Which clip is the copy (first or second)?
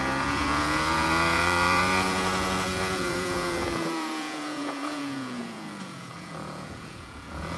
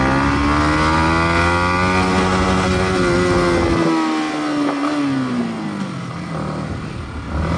first